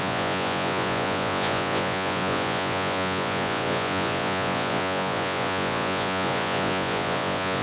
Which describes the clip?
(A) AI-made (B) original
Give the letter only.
A